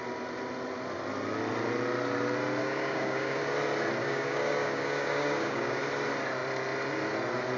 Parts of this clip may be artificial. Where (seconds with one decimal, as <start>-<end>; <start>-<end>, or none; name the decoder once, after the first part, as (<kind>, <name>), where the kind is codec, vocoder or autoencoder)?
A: 2.6-3.4 (codec, DAC); 4.0-5.8